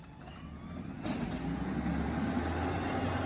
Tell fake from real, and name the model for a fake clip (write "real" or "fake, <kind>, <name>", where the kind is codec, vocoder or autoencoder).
real